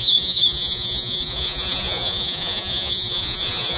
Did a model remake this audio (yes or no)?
yes